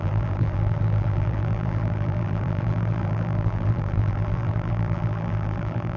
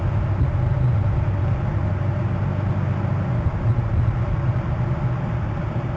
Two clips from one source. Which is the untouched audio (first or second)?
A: second